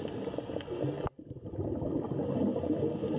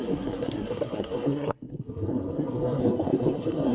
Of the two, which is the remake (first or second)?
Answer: second